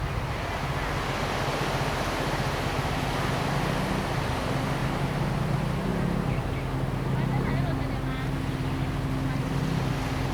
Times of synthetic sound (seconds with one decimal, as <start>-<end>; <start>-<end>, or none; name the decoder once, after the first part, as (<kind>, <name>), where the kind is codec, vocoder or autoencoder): 4.8-5.3 (vocoder, BigVGAN v2)